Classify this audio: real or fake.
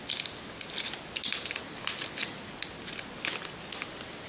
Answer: real